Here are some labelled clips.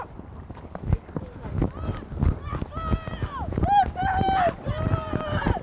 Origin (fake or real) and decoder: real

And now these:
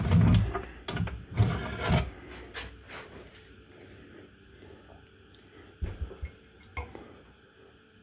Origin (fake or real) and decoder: real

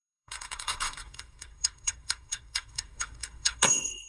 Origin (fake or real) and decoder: fake, codec, SNAC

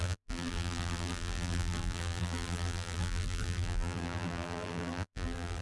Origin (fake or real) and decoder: fake, vocoder, BigVGAN v2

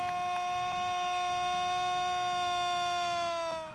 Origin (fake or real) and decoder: real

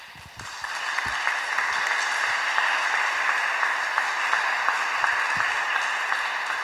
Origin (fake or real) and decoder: real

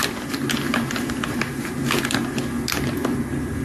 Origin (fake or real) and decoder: real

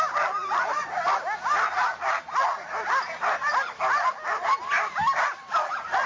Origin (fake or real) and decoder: real